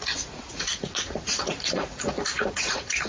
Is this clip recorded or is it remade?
remade